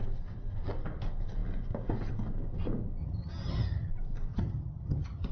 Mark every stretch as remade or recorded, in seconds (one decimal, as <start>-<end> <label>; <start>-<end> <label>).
0.0-3.0 recorded; 3.0-3.9 remade; 3.9-4.3 recorded; 4.3-5.3 remade